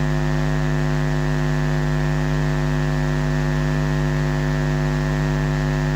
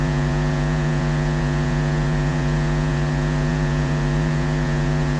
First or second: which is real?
first